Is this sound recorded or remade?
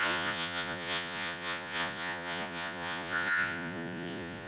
remade